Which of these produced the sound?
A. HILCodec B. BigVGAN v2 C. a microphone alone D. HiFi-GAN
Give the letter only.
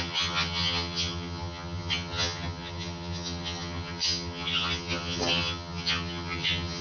D